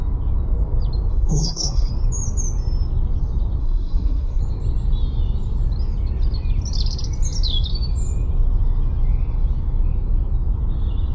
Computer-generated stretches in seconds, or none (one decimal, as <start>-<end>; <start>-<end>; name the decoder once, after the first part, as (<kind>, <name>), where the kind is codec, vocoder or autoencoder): 1.1-1.9 (codec, SNAC); 3.6-4.4

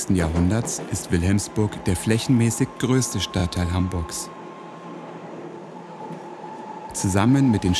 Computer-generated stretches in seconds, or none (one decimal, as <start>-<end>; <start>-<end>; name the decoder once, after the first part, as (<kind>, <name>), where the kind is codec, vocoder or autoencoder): 3.4-7.8 (vocoder, BigVGAN v2)

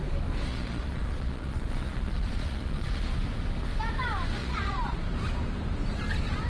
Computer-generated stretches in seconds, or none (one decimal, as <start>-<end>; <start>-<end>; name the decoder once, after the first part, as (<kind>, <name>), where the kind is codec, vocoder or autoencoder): 0.5-3.1 (vocoder, Vocos); 4.4-5.0

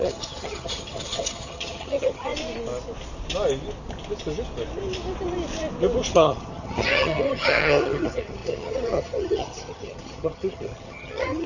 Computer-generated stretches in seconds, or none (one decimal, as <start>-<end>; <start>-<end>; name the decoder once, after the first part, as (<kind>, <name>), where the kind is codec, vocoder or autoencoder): 0.0-2.3 (vocoder, HiFi-GAN); 6.1-11.5

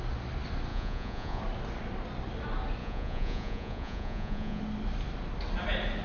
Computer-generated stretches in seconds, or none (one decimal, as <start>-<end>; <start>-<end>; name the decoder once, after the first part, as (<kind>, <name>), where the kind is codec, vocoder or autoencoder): 0.7-1.4 (vocoder, Vocos); 2.8-4.6

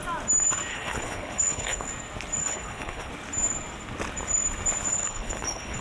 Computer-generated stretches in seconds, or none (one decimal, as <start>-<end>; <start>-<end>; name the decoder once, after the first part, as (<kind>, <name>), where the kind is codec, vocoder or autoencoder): 0.7-1.9 (codec, HILCodec); 2.4-3.1; 4.9-5.8

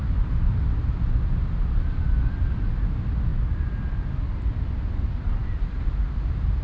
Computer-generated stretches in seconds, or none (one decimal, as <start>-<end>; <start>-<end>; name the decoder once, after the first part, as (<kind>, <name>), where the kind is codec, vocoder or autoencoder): none